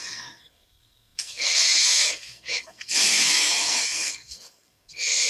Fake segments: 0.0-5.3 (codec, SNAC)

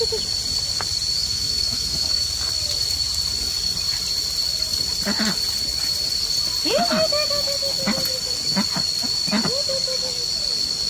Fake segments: 1.2-2.3 (autoencoder, DAC-VAE)

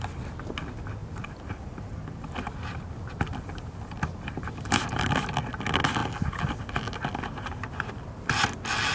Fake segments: 1.0-2.0 (vocoder, BigVGAN v2)

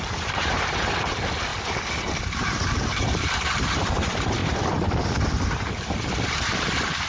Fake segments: 0.0-1.5 (vocoder, BigVGAN v2); 2.2-4.4; 6.0-7.1

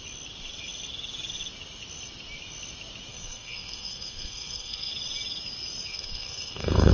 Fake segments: 3.1-4.9 (codec, SNAC); 5.9-6.9

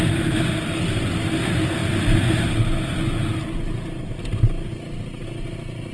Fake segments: none